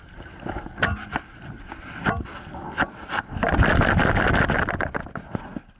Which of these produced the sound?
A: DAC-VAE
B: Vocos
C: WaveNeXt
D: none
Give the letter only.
D